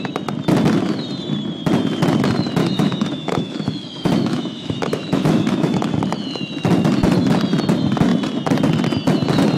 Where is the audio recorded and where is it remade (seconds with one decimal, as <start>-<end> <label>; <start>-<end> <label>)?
0.0-2.6 recorded; 2.6-5.9 remade; 5.9-9.6 recorded